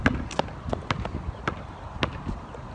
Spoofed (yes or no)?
no